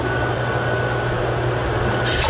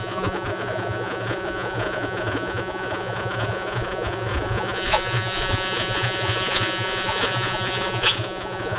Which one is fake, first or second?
second